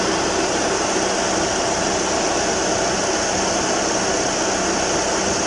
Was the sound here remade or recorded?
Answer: recorded